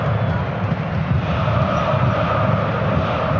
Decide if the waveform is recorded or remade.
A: recorded